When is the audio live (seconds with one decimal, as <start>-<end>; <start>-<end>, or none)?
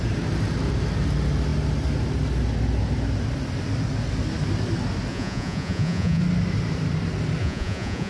0.0-5.1; 6.2-7.4